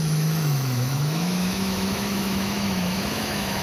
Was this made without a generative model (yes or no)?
no